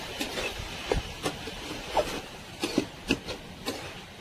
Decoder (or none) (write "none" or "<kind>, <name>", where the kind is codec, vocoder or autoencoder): vocoder, BigVGAN v2